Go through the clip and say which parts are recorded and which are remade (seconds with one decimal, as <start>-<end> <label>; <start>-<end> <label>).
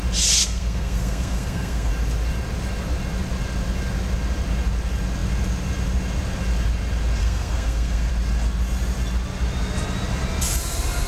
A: 0.0-0.4 recorded; 0.4-1.9 remade; 1.9-7.2 recorded; 7.2-8.1 remade; 8.1-11.1 recorded